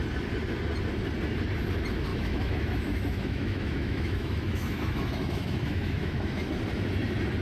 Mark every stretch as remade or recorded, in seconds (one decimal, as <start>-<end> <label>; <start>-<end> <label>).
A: 0.0-2.1 recorded; 2.1-6.5 remade; 6.5-7.4 recorded

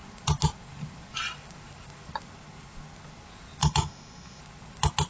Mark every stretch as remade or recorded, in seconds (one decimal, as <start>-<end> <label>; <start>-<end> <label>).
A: 0.0-3.6 recorded; 3.6-4.4 remade; 4.4-5.1 recorded

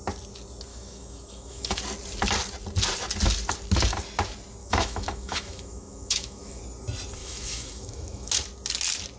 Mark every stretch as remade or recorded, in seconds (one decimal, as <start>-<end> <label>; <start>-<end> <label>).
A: 0.0-0.7 recorded; 0.7-1.8 remade; 1.8-4.6 recorded; 4.6-6.6 remade; 6.6-7.2 recorded; 7.2-8.3 remade; 8.3-9.2 recorded

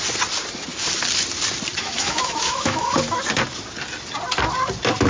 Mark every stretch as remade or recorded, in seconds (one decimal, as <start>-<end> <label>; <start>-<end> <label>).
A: 0.0-1.8 recorded; 1.8-3.0 remade; 3.0-5.1 recorded

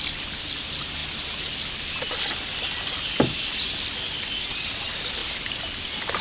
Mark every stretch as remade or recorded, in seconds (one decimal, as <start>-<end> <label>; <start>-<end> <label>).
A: 0.0-6.2 recorded